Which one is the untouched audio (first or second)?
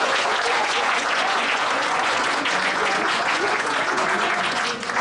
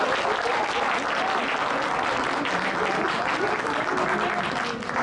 second